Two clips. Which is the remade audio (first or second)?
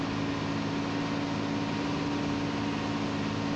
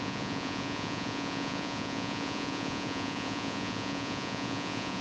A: second